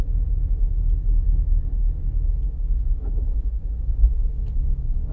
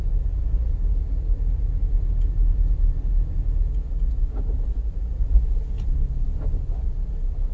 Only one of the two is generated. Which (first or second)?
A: first